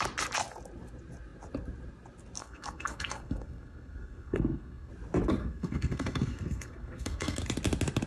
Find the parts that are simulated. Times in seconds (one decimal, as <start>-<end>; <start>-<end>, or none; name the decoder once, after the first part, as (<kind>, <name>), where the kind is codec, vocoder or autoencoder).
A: 2.4-4.9 (codec, SNAC); 5.4-7.4